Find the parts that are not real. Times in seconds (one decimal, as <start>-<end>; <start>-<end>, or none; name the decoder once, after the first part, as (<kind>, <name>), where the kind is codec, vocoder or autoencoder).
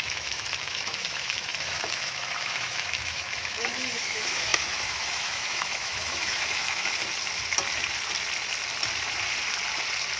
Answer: 0.0-7.0 (autoencoder, DAC-VAE)